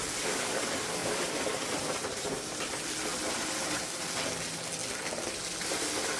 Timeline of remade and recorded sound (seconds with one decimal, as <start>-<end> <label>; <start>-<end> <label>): 0.0-1.0 recorded; 1.0-2.7 remade; 2.7-3.1 recorded; 3.1-4.0 remade; 4.0-6.2 recorded